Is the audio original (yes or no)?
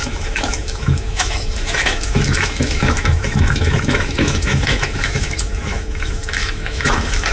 no